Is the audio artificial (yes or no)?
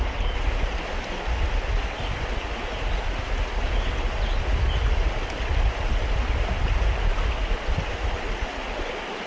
no